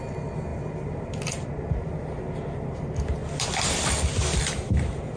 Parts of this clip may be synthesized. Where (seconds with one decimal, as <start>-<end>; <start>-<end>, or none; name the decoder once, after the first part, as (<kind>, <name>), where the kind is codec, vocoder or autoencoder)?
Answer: none